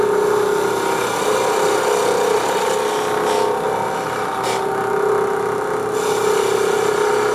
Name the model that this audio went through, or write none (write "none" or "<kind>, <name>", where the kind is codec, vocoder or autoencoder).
none